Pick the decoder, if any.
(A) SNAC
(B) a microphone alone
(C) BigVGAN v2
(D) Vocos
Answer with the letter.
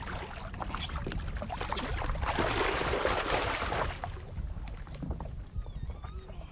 B